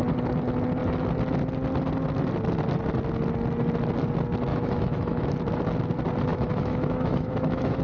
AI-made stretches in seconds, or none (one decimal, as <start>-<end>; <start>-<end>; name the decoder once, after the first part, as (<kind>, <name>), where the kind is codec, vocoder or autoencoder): 4.5-5.3 (autoencoder, DAC-VAE); 6.3-7.8